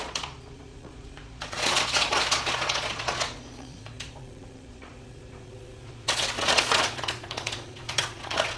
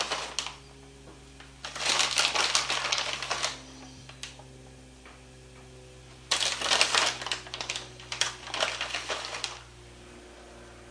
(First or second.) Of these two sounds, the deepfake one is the first